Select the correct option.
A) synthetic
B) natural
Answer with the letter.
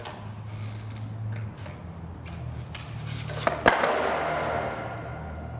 B